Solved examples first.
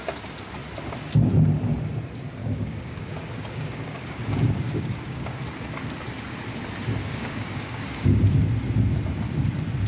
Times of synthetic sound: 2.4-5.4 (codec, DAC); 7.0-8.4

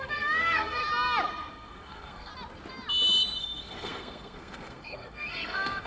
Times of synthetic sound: 0.0-0.8 (codec, SNAC); 1.5-2.3; 3.4-5.9

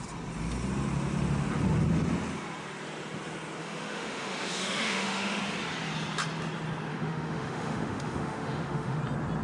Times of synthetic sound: 3.6-5.4 (autoencoder, DAC-VAE); 6.9-9.0

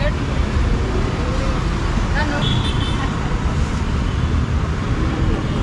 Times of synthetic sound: 0.0-1.3 (vocoder, BigVGAN v2); 2.7-5.6

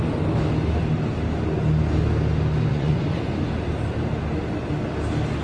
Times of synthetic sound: 2.7-3.4 (vocoder, Vocos)

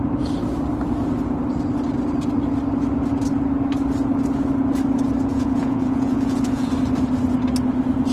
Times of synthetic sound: 5.3-6.7 (vocoder, Vocos)

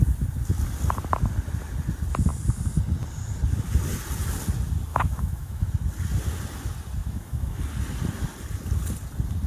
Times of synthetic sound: 4.9-5.7 (autoencoder, DAC-VAE); 7.0-7.6